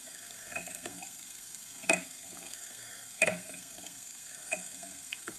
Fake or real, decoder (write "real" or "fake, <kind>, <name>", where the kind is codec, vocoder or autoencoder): fake, codec, SNAC